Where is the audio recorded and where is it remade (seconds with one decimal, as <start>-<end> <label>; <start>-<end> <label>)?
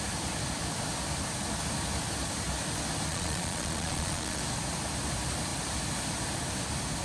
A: 0.0-3.1 recorded; 3.1-4.4 remade; 4.4-7.0 recorded